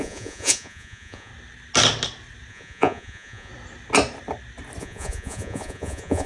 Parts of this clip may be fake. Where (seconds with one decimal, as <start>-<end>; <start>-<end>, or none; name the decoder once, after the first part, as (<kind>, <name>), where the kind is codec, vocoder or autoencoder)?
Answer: 0.0-1.3 (vocoder, Vocos); 2.5-3.5; 4.8-6.3